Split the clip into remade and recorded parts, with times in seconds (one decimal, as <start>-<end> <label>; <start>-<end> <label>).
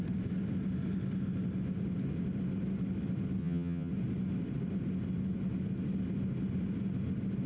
0.0-3.4 recorded; 3.4-3.9 remade; 3.9-7.5 recorded